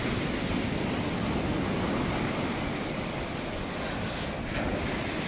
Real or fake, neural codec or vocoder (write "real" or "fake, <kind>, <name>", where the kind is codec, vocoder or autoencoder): real